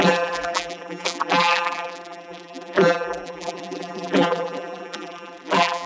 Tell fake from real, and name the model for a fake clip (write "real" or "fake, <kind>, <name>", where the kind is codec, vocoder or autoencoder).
fake, vocoder, BigVGAN v2